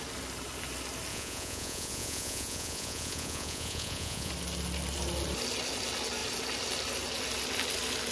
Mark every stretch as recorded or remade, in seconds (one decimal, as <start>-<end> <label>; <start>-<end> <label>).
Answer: 0.0-1.1 recorded; 1.1-4.3 remade; 4.3-8.1 recorded